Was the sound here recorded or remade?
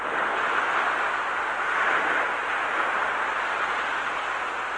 recorded